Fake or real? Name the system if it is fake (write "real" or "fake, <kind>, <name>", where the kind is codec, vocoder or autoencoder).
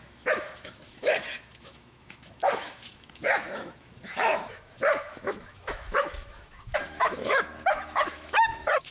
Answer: fake, autoencoder, DAC-VAE